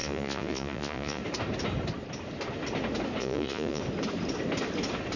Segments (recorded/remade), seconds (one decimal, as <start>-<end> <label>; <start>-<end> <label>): 0.0-1.2 remade; 1.2-3.2 recorded; 3.2-3.8 remade; 3.8-5.2 recorded